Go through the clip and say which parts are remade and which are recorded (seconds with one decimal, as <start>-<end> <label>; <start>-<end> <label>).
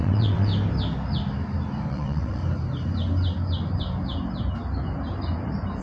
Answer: 0.0-0.5 remade; 0.5-1.9 recorded; 1.9-2.4 remade; 2.4-5.8 recorded